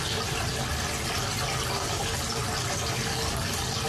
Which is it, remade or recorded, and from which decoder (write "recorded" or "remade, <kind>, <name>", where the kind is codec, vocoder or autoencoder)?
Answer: recorded